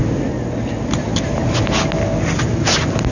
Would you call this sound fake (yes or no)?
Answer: no